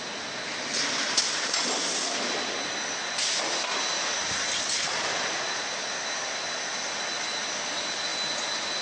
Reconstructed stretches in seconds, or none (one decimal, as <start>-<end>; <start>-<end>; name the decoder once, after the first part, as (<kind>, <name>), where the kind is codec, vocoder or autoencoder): none